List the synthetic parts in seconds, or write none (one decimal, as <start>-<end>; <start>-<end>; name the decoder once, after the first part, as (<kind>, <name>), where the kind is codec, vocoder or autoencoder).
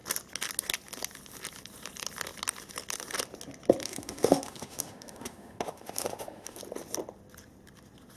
3.8-6.6 (autoencoder, DAC-VAE)